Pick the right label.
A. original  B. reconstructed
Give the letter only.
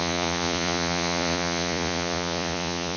B